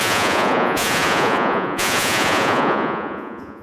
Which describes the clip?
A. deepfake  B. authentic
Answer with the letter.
A